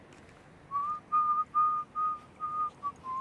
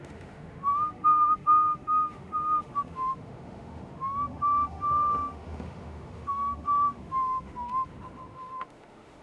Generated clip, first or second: second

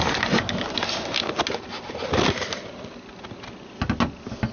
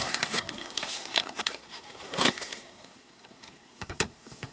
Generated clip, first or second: second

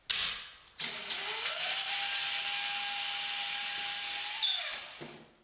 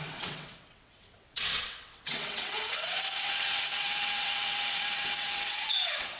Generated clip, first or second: second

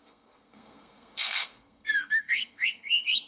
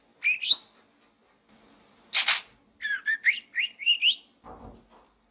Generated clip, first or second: first